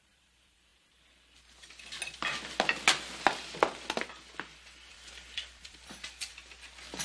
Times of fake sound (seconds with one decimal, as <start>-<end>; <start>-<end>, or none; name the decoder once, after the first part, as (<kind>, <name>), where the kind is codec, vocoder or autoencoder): 0.0-0.7 (vocoder, BigVGAN v2); 4.9-7.0